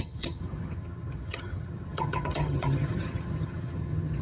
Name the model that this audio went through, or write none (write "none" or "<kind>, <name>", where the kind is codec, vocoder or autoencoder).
vocoder, HiFi-GAN